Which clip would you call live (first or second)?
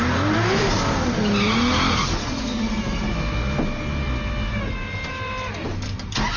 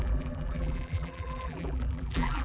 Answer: first